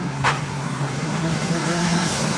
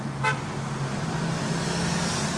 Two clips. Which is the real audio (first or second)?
second